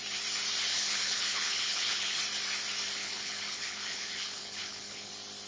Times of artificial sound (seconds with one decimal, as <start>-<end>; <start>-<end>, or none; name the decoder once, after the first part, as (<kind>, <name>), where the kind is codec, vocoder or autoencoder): 0.7-2.2 (codec, HILCodec); 3.0-5.1